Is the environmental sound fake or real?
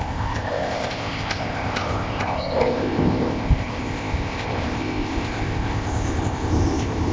fake